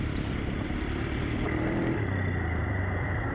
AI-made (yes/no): yes